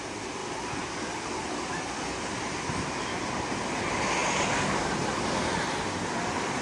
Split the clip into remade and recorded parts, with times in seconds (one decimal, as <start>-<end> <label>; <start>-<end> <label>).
0.0-6.6 recorded